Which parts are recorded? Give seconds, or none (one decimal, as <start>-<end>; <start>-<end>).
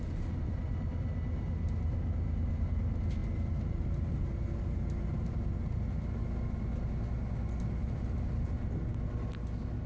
0.0-9.9